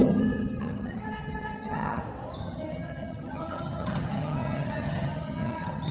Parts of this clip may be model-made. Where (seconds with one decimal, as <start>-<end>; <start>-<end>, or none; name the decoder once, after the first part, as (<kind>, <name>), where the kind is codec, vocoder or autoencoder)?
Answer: 0.0-2.0 (vocoder, HiFi-GAN); 2.4-5.9